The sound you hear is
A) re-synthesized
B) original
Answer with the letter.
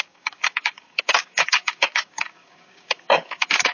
A